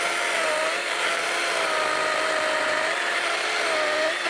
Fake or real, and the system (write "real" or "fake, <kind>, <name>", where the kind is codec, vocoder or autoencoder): real